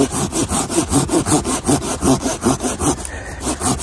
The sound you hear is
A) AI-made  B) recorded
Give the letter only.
B